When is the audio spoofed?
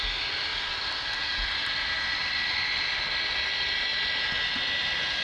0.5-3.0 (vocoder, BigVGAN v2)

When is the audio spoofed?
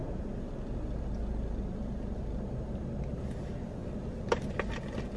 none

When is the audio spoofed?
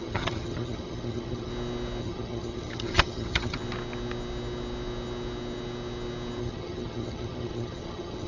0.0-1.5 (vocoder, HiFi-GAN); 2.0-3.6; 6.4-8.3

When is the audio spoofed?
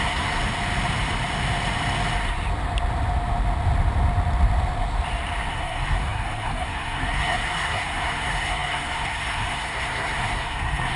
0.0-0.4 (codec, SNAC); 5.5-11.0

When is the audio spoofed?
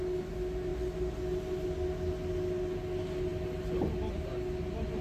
none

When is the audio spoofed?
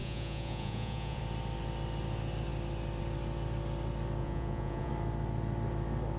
0.0-1.2 (vocoder, Vocos); 4.2-4.9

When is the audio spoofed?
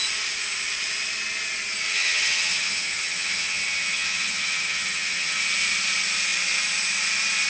1.9-5.4 (vocoder, HiFi-GAN)